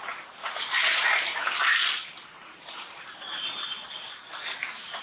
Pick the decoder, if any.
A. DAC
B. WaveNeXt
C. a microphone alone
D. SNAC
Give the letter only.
C